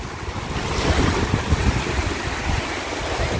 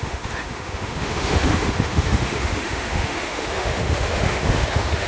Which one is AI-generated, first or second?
second